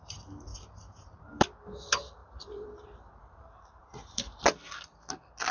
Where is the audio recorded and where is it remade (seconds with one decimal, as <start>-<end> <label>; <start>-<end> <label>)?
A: 0.0-0.5 recorded; 0.5-1.3 remade; 1.3-2.2 recorded; 2.2-3.0 remade; 3.0-3.8 recorded; 3.8-4.4 remade; 4.4-5.5 recorded

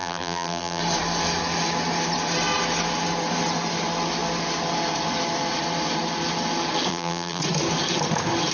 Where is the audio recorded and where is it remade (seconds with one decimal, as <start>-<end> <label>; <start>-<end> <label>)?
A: 0.0-0.8 remade; 0.8-6.9 recorded; 6.9-7.4 remade; 7.4-8.5 recorded